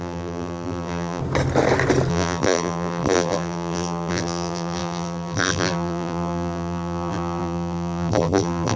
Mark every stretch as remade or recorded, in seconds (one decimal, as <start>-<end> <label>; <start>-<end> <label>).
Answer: 0.0-1.2 remade; 1.2-2.1 recorded; 2.1-8.8 remade